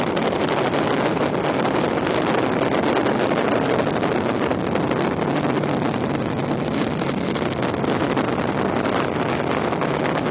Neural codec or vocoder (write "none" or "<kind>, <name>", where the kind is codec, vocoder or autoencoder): none